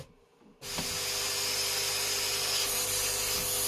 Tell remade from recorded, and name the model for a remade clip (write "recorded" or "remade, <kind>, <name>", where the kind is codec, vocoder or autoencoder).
recorded